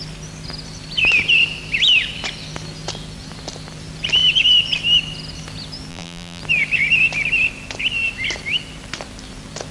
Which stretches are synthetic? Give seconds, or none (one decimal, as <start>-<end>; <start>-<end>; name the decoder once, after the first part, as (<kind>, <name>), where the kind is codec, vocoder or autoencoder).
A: 5.9-6.4 (vocoder, BigVGAN v2)